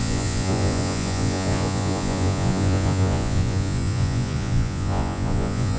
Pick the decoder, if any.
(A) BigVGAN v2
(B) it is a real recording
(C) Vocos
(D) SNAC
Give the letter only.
C